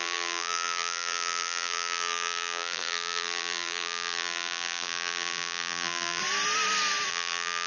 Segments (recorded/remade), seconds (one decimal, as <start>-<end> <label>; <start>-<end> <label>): 0.0-6.2 remade; 6.2-7.1 recorded; 7.1-7.7 remade